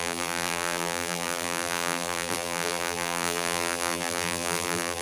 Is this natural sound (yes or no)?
no